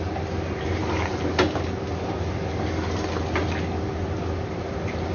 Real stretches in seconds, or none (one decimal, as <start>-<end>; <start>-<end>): 0.0-5.1